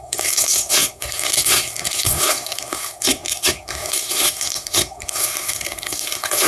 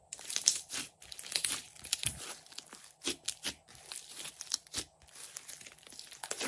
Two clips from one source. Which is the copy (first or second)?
first